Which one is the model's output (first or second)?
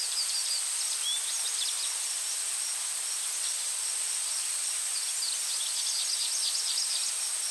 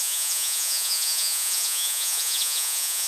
second